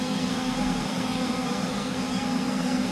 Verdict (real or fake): fake